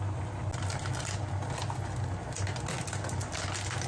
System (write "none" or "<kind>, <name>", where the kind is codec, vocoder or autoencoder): none